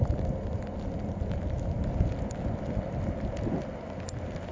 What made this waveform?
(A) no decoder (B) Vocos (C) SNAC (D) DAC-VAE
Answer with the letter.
A